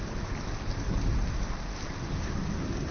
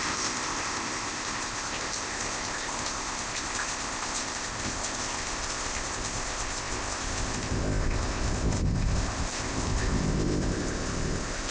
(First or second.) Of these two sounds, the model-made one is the second